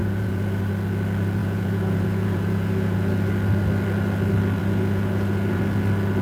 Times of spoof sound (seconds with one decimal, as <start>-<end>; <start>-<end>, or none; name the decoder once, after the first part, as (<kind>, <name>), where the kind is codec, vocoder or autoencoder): 0.0-0.7 (vocoder, Vocos); 1.4-3.1; 4.6-5.6